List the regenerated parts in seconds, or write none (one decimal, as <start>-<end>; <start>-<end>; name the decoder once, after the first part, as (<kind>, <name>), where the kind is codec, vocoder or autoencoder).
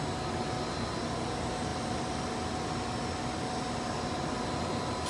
none